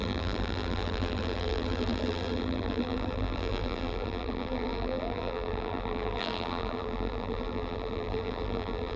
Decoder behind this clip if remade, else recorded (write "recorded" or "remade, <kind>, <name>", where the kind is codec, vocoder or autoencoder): remade, vocoder, BigVGAN v2